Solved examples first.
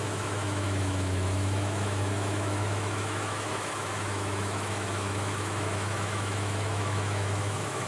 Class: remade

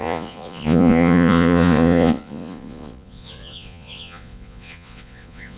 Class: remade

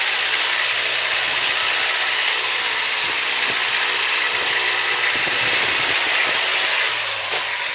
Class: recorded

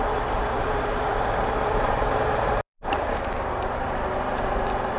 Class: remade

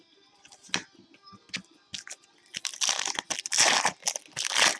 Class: recorded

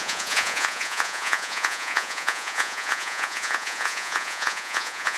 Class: remade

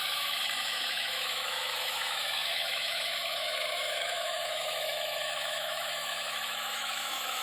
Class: remade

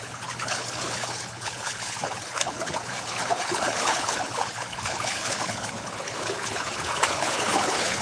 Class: remade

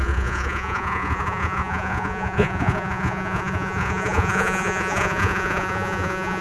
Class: remade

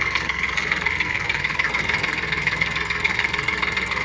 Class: remade